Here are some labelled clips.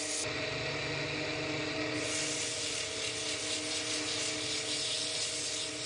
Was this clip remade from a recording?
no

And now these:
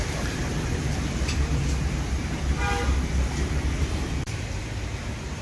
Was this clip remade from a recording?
yes